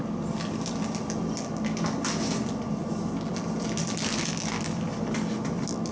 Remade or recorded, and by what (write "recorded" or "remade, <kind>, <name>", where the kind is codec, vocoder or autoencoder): recorded